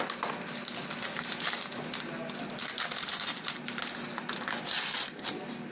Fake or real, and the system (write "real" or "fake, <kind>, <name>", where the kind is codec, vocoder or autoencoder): real